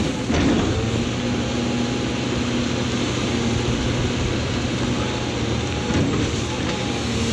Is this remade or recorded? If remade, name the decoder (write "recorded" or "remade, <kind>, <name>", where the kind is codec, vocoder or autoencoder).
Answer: recorded